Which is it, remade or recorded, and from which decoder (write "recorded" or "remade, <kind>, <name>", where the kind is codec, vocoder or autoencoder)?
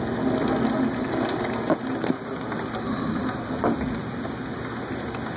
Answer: recorded